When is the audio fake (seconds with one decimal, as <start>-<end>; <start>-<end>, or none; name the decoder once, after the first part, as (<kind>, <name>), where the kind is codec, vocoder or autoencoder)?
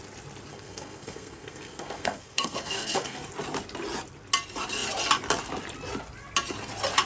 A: 0.5-3.2 (codec, SNAC)